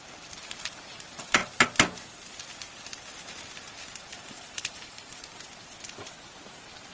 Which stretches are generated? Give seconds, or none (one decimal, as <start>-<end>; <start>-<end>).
0.0-1.4; 4.1-6.9